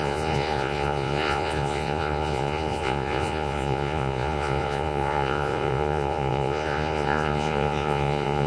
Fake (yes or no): yes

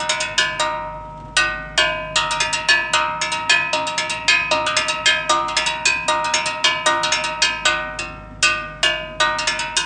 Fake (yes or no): no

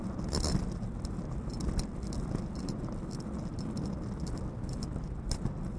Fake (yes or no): no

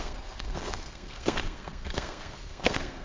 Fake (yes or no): yes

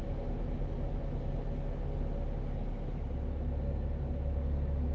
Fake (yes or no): no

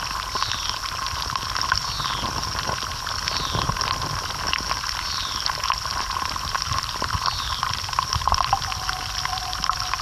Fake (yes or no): no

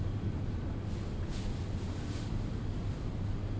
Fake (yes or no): no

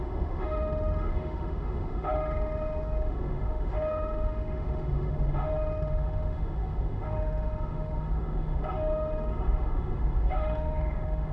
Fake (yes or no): yes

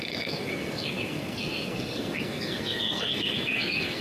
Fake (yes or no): yes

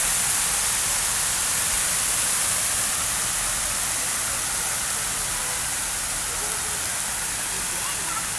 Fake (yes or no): no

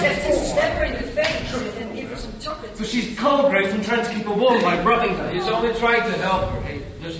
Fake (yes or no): no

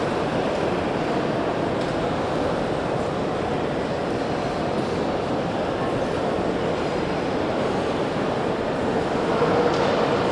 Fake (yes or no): yes